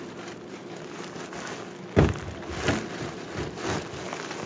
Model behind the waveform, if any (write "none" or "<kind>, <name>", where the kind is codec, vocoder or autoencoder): none